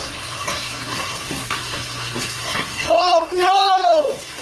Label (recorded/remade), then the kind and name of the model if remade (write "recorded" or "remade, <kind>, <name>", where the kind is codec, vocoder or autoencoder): remade, codec, SNAC